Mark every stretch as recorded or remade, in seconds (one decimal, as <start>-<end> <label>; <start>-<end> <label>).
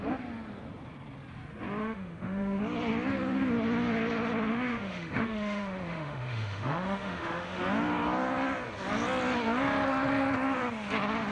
0.0-1.8 recorded; 1.8-2.6 remade; 2.6-4.5 recorded; 4.5-7.6 remade; 7.6-11.3 recorded